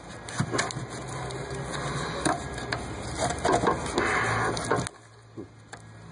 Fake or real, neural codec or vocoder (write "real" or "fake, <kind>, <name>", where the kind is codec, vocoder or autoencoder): real